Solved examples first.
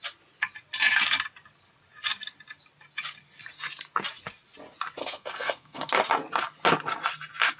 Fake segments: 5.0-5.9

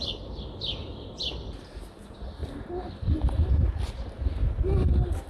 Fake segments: none

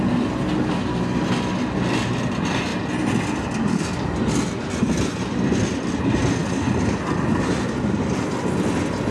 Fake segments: none

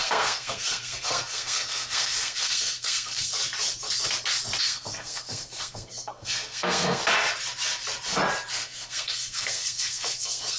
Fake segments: 0.0-3.4; 4.6-7.0; 8.5-10.6

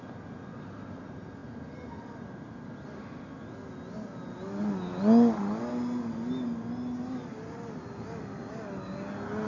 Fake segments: none

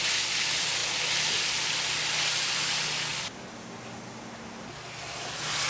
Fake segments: none

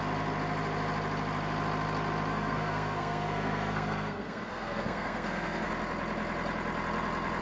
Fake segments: 2.3-5.7

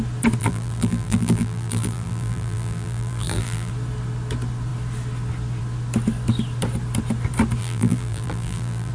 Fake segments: 0.4-3.7; 7.6-8.9